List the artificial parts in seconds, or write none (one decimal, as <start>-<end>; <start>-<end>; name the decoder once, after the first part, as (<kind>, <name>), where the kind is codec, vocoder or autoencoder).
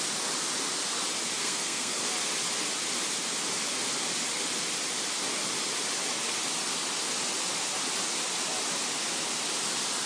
1.4-2.0 (codec, SNAC)